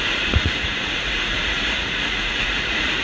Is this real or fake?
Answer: fake